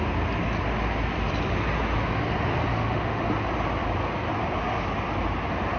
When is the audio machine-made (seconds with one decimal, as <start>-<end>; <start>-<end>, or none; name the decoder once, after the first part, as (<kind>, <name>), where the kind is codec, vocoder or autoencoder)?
2.7-3.2 (autoencoder, DAC-VAE)